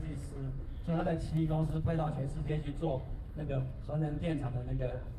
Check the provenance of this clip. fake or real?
fake